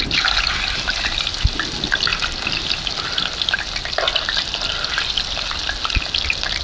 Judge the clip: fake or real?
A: real